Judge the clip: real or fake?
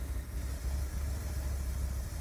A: real